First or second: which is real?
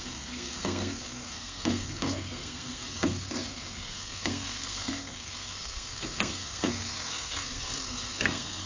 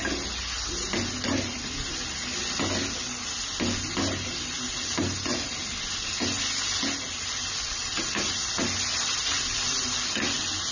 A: second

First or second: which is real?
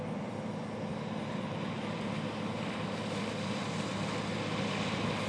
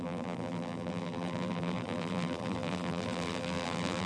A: first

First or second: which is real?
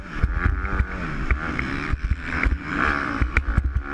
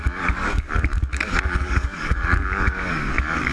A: first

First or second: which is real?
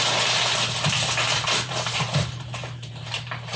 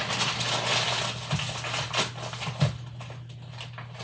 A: second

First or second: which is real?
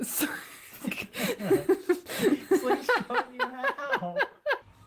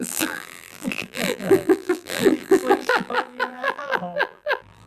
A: first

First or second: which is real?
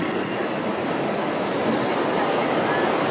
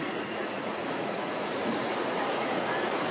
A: first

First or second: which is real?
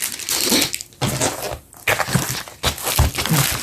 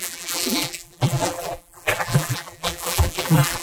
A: first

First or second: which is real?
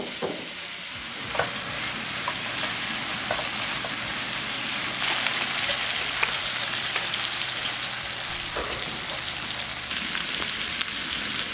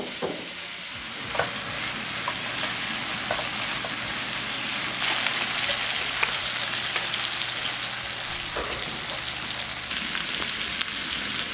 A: second